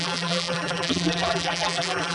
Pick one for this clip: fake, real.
fake